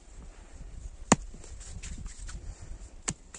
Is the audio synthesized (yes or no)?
no